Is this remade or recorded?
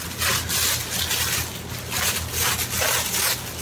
recorded